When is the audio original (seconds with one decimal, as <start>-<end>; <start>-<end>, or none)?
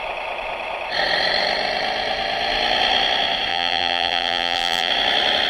0.0-3.5; 4.9-5.5